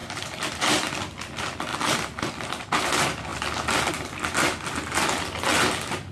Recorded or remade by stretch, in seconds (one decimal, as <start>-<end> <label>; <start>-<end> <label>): 0.0-0.9 remade; 0.9-1.7 recorded; 1.7-2.6 remade; 2.6-6.1 recorded